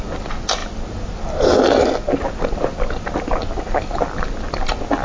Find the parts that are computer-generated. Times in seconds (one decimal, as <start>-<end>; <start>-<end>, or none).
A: none